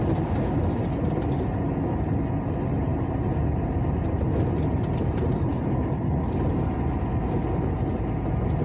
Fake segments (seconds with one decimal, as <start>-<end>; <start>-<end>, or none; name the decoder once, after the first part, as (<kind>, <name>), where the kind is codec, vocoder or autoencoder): none